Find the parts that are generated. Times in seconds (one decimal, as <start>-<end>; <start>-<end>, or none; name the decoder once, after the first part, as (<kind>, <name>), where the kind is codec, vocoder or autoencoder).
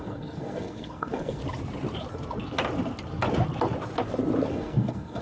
0.0-1.4 (codec, SNAC); 4.5-5.2